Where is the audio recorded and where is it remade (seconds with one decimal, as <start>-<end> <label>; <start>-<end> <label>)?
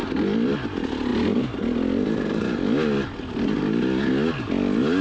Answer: 0.0-5.0 recorded